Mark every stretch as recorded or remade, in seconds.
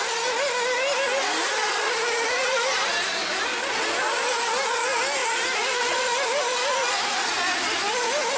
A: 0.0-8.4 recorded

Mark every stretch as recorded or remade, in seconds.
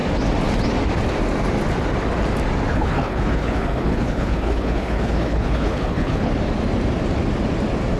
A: 0.0-2.7 recorded; 2.7-6.3 remade; 6.3-8.0 recorded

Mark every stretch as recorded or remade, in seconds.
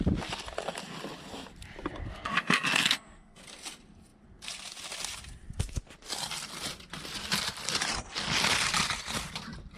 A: 0.0-2.0 recorded; 2.0-3.4 remade; 3.4-9.8 recorded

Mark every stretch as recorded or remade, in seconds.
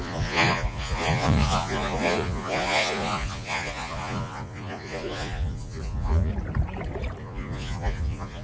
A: 0.0-6.3 remade; 6.3-7.2 recorded; 7.2-8.4 remade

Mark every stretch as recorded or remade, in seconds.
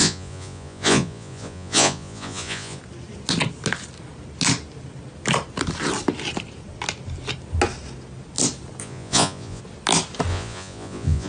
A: 0.0-2.8 remade; 2.8-8.8 recorded; 8.8-9.6 remade; 9.6-10.3 recorded; 10.3-11.3 remade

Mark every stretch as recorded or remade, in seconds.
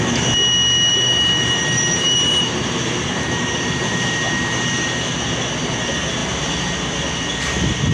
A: 0.0-0.9 recorded; 0.9-4.9 remade; 4.9-7.9 recorded